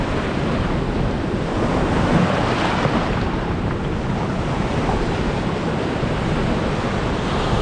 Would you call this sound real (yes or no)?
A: yes